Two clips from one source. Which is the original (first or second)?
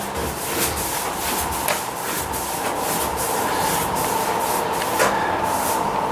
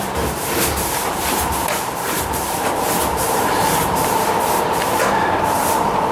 first